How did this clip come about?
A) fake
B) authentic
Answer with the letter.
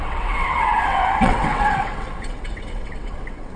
A